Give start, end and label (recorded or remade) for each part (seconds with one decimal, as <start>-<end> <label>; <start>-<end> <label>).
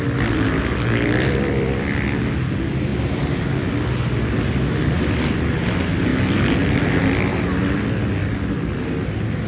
0.0-9.5 recorded